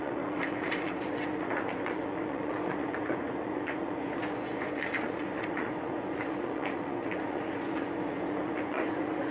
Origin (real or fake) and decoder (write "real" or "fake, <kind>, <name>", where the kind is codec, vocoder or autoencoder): fake, vocoder, Vocos